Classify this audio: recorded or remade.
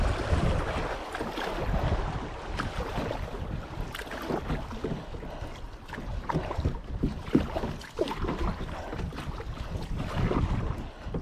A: recorded